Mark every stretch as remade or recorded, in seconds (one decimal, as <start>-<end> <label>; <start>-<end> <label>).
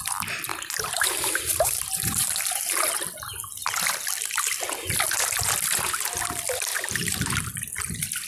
0.0-0.5 recorded; 0.5-2.9 remade; 2.9-6.7 recorded; 6.7-7.3 remade; 7.3-8.3 recorded